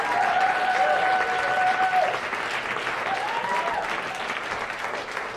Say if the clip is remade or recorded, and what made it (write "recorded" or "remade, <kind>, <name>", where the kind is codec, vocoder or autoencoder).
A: recorded